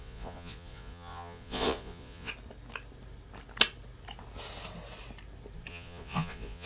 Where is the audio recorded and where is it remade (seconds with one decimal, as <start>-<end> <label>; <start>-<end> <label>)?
0.0-2.3 remade; 2.3-5.7 recorded; 5.7-6.7 remade